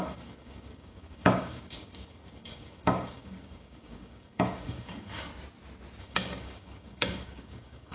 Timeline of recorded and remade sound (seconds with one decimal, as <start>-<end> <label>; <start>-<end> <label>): 0.0-5.3 remade; 5.3-6.0 recorded; 6.0-7.9 remade